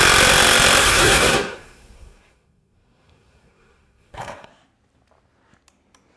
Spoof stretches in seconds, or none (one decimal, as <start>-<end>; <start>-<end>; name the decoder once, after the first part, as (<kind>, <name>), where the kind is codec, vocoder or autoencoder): 0.8-4.5 (codec, SNAC)